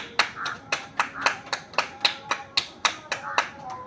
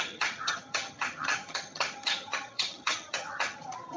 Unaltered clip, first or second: first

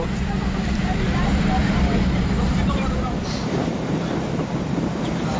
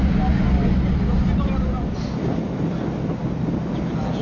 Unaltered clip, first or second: second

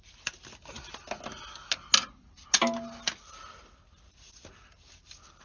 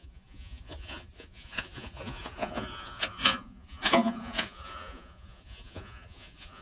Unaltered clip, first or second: first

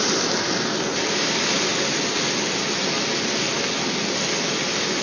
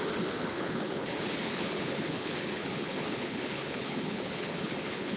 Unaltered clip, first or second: first